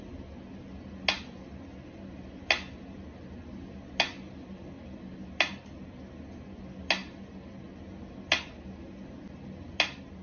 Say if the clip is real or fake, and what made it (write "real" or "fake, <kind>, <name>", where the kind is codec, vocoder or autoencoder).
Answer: real